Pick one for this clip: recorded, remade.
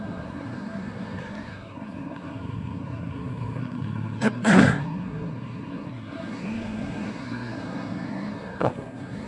remade